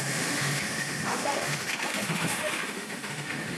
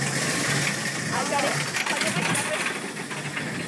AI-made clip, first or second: first